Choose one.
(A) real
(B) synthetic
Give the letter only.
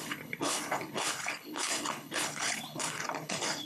B